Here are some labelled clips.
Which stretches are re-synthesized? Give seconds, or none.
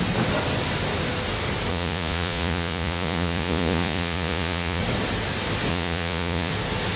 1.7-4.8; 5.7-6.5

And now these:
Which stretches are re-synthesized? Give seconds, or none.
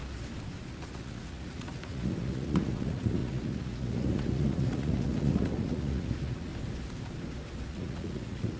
0.6-6.5; 7.7-8.6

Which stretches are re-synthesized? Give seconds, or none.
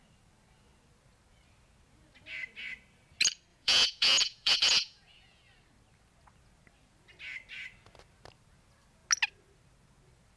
3.5-5.4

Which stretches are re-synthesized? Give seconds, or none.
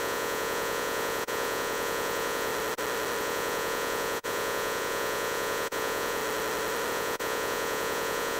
0.0-2.5; 3.2-6.2; 6.9-8.4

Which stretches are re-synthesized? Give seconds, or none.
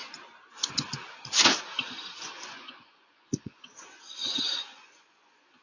2.0-5.6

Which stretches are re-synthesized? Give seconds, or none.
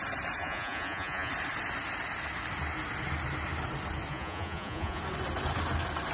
0.4-1.3; 4.1-5.0